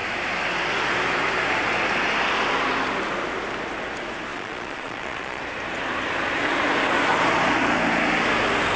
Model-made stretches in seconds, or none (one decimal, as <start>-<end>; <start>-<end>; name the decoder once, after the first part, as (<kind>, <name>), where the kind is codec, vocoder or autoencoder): 4.3-5.4 (vocoder, Vocos)